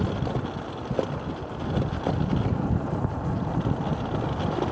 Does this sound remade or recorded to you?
recorded